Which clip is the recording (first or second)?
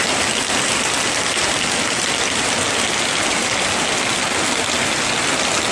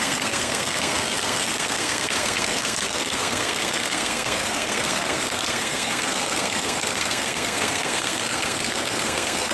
first